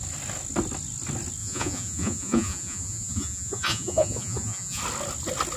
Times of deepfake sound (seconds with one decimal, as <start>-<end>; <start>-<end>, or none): 1.4-4.8